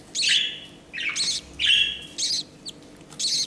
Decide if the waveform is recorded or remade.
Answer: recorded